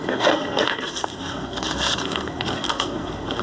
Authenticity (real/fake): fake